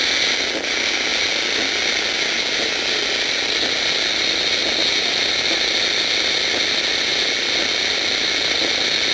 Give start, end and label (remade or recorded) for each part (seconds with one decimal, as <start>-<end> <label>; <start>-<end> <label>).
0.0-9.1 recorded

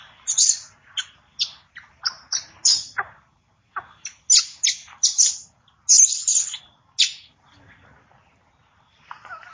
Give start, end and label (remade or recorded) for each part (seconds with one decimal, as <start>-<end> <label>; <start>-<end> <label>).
0.0-9.5 recorded